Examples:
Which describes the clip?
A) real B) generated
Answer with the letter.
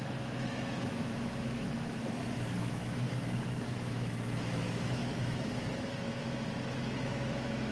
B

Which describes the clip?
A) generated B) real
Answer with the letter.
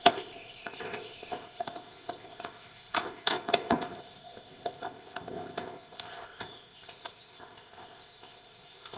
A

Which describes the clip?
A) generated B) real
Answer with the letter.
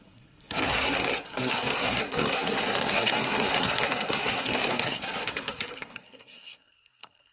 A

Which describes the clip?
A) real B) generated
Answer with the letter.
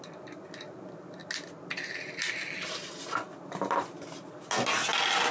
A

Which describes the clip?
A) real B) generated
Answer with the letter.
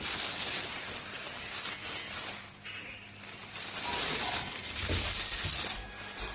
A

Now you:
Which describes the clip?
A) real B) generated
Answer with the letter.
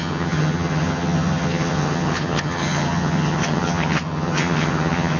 B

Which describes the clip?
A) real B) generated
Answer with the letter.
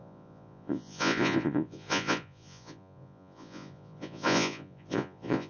B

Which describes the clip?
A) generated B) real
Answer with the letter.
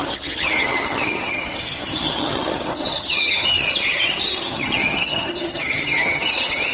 A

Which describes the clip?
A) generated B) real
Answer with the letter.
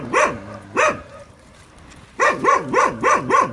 B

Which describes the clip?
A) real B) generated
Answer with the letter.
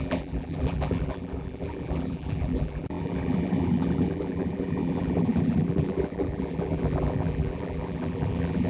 B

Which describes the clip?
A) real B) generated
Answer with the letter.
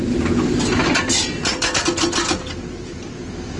A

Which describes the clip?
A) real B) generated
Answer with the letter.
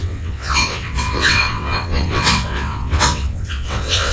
B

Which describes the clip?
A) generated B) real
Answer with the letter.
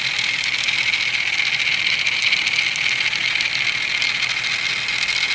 B